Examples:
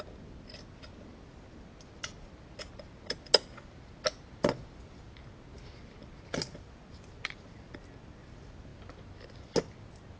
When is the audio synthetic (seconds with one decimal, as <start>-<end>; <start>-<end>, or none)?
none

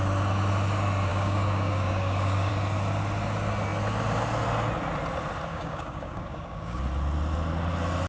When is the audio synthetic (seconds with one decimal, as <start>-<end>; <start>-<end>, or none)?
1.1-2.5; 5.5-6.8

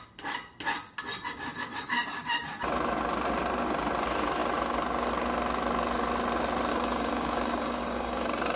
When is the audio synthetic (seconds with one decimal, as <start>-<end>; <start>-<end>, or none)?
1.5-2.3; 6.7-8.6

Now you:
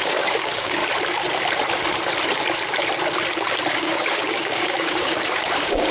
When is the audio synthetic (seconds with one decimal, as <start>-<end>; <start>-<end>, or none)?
0.0-0.8; 3.7-5.9